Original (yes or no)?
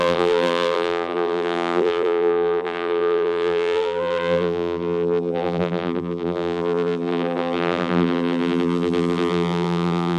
no